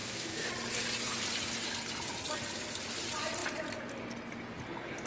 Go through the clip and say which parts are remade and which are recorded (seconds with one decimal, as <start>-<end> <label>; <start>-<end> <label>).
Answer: 0.0-0.5 remade; 0.5-5.1 recorded